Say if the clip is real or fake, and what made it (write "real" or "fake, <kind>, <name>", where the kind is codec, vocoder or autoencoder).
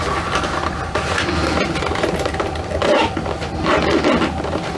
real